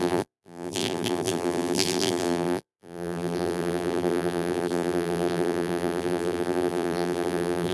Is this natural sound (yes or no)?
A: no